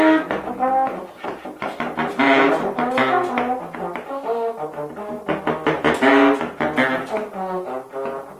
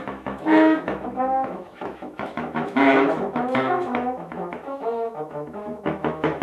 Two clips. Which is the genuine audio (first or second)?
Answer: first